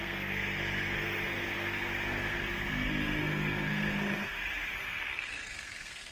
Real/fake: fake